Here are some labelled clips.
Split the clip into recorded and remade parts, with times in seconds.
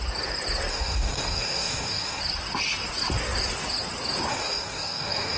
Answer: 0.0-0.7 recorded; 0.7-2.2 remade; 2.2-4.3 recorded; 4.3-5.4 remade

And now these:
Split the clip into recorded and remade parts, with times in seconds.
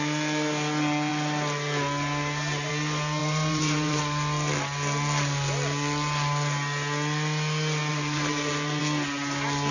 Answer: 0.0-3.2 recorded; 3.2-4.0 remade; 4.0-7.9 recorded; 7.9-8.8 remade; 8.8-9.7 recorded